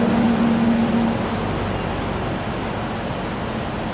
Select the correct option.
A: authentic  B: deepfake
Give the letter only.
A